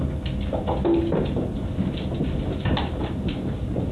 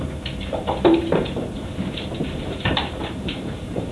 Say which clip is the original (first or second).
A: first